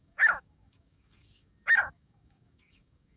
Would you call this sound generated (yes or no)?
yes